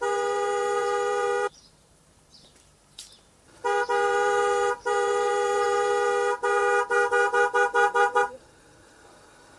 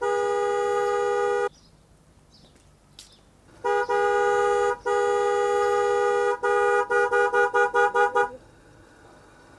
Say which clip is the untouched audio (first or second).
second